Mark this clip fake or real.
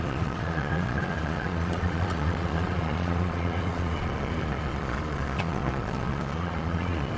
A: fake